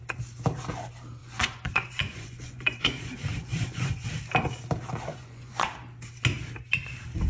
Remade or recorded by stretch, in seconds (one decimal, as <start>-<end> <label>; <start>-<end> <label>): 0.0-1.2 recorded; 1.2-4.1 remade; 4.1-5.1 recorded; 5.1-5.7 remade; 5.7-7.3 recorded